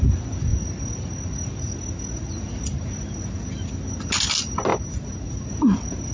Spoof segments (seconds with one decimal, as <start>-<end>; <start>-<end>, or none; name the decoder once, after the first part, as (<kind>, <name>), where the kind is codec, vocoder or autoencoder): 4.7-5.5 (vocoder, BigVGAN v2)